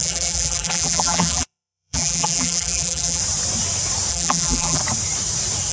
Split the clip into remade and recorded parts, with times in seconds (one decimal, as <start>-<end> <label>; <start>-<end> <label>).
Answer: 0.0-3.2 remade; 3.2-4.1 recorded; 4.1-4.8 remade; 4.8-5.7 recorded